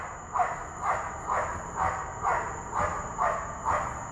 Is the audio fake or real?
real